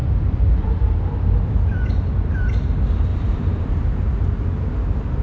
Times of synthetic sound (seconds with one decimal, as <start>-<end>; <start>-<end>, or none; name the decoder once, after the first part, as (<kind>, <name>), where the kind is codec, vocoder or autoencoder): 0.0-1.0 (vocoder, BigVGAN v2); 3.1-4.3